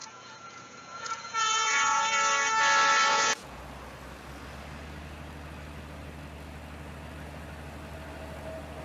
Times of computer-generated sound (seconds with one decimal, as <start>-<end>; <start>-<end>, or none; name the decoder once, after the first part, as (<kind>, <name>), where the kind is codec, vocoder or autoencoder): 0.0-2.0 (vocoder, Vocos); 3.1-3.6